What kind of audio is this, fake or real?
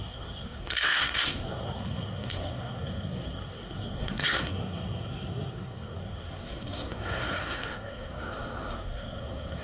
fake